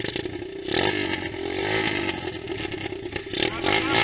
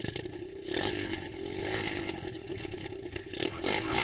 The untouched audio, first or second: first